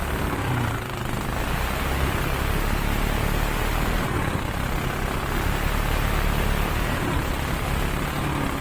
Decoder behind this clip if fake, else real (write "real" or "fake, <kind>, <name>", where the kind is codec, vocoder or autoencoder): real